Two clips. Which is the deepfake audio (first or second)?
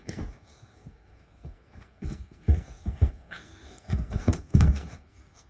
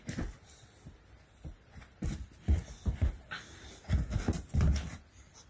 first